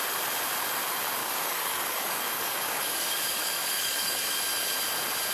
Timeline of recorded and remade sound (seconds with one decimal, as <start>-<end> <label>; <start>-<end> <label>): 0.0-1.2 recorded; 1.2-4.4 remade; 4.4-5.3 recorded